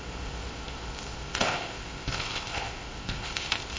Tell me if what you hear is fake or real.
fake